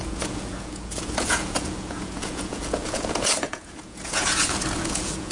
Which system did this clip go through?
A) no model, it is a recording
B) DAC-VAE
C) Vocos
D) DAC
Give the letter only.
C